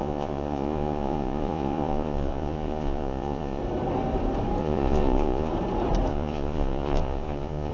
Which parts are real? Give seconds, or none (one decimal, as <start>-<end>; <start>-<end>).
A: 3.6-4.6; 5.5-6.1